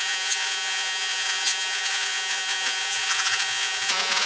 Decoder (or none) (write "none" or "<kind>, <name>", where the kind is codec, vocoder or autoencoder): vocoder, Vocos